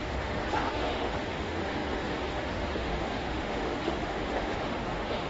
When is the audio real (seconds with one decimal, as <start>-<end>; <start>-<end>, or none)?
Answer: none